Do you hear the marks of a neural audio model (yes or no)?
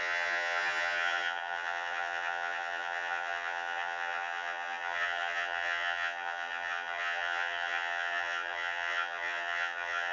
yes